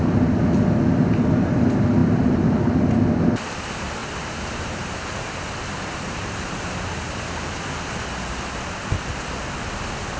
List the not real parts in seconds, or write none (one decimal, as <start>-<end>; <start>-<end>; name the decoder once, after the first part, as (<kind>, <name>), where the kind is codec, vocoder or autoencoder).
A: 4.0-5.0 (vocoder, BigVGAN v2); 5.9-7.6